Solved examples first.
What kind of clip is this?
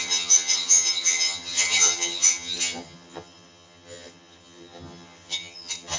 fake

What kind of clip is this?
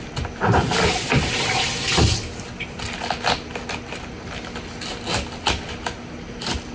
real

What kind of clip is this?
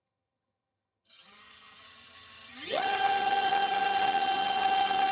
fake